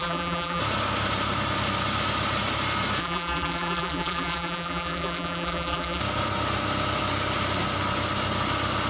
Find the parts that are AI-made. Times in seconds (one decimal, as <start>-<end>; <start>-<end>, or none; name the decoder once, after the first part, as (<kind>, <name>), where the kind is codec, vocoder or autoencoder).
0.0-0.6 (vocoder, BigVGAN v2); 3.0-6.0